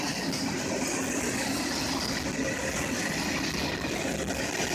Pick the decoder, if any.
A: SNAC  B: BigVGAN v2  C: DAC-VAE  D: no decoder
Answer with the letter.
D